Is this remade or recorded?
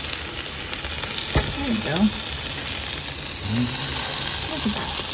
recorded